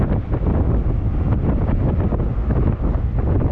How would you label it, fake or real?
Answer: real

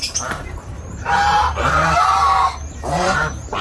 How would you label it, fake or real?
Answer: fake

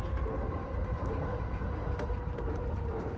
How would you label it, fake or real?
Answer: real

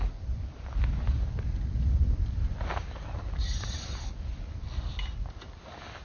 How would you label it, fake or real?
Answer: fake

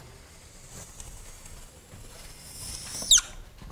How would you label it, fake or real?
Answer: real